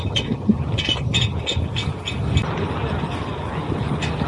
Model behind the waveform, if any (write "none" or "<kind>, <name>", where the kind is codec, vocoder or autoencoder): none